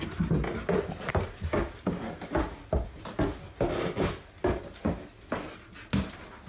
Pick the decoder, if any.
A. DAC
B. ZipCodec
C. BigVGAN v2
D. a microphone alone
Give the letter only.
D